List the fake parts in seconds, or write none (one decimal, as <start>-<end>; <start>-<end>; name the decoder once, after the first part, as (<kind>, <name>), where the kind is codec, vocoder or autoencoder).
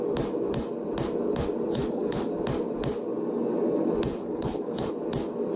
1.7-2.3 (codec, HILCodec); 4.2-4.9